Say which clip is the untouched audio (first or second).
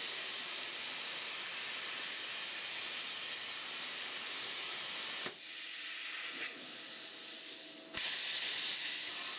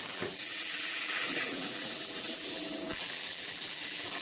first